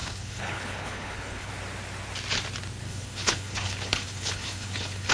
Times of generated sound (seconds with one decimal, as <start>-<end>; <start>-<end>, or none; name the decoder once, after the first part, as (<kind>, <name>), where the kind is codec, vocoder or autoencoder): 0.0-1.5 (codec, HILCodec); 2.8-5.1